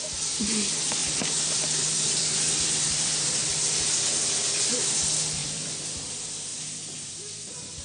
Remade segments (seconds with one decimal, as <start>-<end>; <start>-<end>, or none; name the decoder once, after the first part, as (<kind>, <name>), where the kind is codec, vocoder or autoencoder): 1.0-3.5 (vocoder, BigVGAN v2); 5.4-6.1